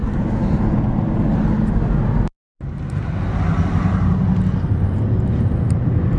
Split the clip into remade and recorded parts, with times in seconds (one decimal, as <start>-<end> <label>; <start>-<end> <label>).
0.0-6.2 recorded